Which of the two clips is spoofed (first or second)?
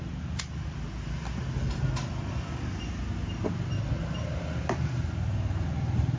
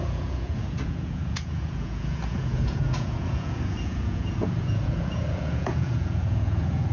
second